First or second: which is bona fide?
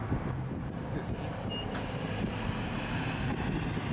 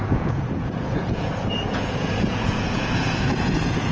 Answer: first